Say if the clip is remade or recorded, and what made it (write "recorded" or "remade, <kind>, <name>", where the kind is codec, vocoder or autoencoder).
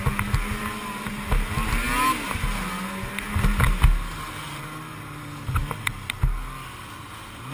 recorded